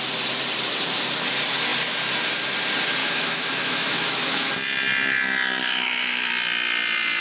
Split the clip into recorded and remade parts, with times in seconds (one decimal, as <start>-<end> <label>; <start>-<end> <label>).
0.0-3.0 recorded; 3.0-4.5 remade; 4.5-5.6 recorded; 5.6-6.3 remade; 6.3-7.2 recorded